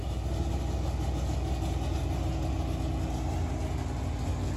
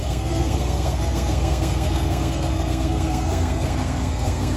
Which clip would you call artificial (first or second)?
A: second